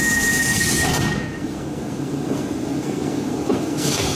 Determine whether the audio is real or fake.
fake